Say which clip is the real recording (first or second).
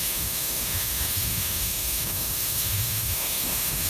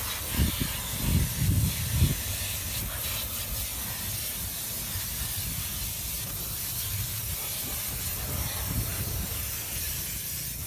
second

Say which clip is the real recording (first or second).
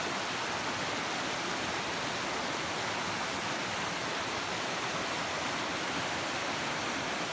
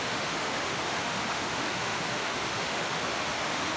first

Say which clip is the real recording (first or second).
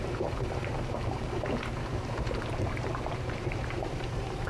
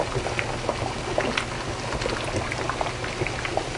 second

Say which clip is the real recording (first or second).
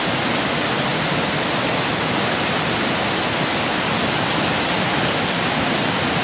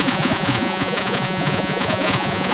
first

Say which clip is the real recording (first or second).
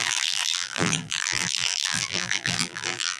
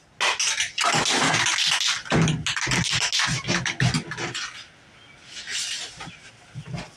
second